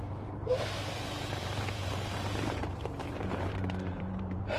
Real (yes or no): no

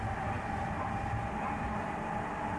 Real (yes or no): no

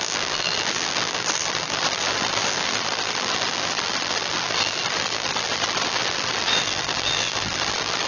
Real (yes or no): no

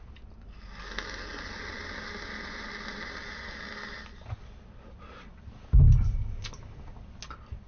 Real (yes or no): yes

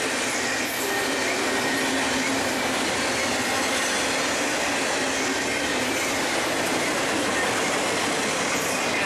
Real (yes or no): yes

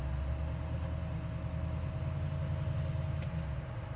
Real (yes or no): yes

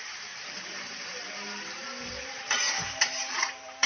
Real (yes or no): no